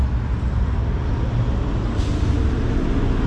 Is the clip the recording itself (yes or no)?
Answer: yes